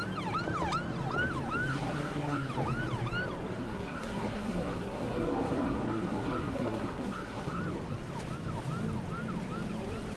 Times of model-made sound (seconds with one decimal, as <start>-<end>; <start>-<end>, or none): 1.7-2.5; 3.6-7.6